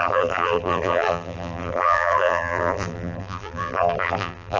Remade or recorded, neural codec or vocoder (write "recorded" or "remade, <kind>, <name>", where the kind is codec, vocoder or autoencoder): remade, vocoder, BigVGAN v2